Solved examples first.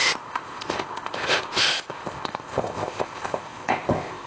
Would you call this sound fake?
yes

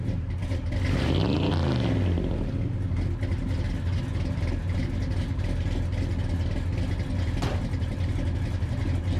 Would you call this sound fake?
no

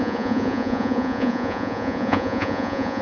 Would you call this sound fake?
yes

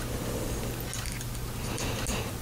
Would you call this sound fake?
no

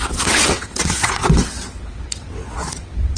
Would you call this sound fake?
yes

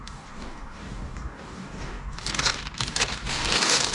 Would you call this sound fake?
yes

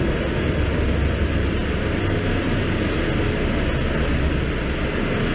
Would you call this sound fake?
no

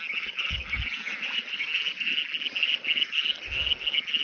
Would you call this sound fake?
no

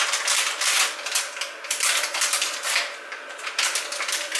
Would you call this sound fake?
no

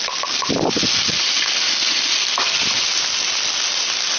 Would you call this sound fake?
no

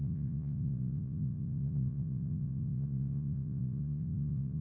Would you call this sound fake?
yes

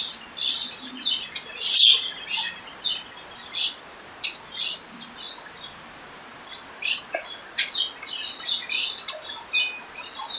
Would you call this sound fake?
no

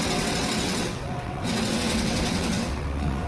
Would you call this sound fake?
yes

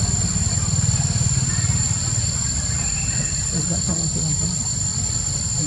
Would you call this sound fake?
yes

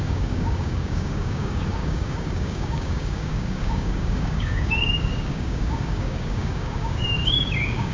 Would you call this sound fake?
yes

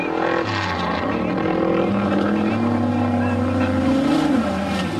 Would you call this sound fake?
no